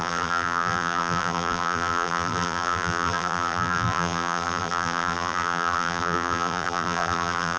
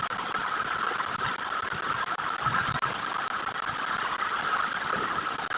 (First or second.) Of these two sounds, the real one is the second